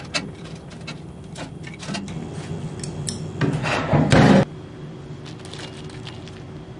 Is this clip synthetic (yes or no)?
no